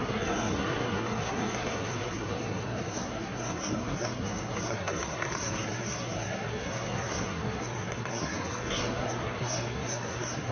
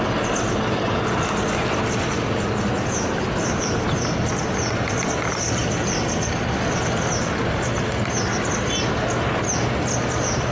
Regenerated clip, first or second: first